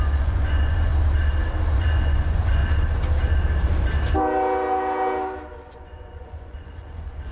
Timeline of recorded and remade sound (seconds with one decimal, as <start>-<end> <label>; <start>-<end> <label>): 0.0-0.9 remade; 0.9-1.7 recorded; 1.7-2.6 remade; 2.6-5.7 recorded; 5.7-7.3 remade